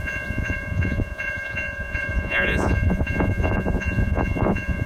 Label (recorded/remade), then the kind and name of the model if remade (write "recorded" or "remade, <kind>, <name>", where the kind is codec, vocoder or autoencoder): remade, vocoder, Vocos